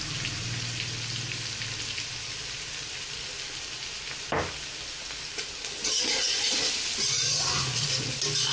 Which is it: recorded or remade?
recorded